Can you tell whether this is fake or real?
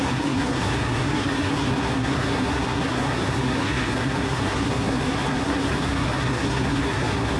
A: fake